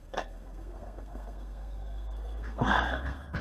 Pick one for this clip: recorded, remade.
remade